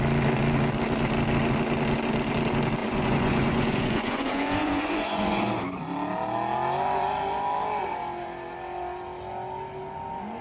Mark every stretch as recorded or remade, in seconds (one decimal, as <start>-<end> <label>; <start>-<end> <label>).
0.0-2.8 recorded; 2.8-5.5 remade; 5.5-10.4 recorded